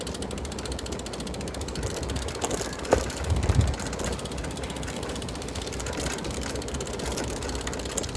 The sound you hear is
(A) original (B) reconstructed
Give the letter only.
A